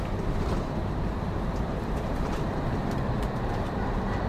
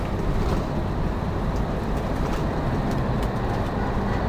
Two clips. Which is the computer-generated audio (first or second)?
first